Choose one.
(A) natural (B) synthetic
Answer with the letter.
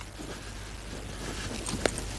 A